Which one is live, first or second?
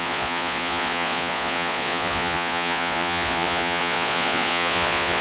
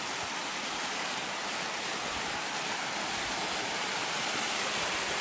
second